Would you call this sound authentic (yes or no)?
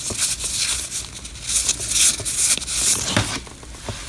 yes